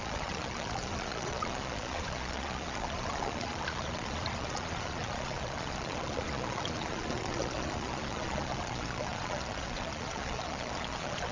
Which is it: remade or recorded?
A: remade